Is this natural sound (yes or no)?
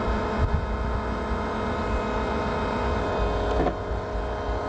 yes